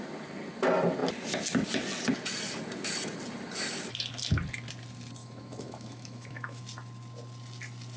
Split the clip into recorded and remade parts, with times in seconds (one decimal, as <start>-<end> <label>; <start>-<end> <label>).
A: 0.0-5.2 recorded; 5.2-6.6 remade; 6.6-8.0 recorded